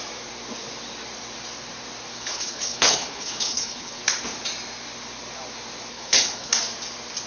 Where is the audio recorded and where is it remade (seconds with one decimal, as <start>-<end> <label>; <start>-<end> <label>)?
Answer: 0.0-2.1 recorded; 2.1-4.0 remade; 4.0-5.9 recorded; 5.9-6.5 remade; 6.5-7.3 recorded